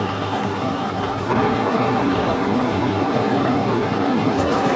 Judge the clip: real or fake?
fake